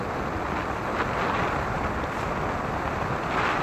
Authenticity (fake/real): real